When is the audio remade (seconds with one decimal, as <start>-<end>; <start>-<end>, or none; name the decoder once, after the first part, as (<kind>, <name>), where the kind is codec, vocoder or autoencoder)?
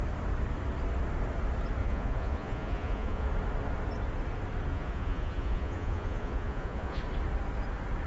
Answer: 1.8-3.3 (vocoder, Vocos); 4.7-7.0